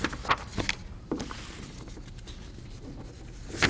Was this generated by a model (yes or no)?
no